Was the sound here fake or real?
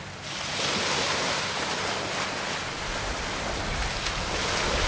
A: real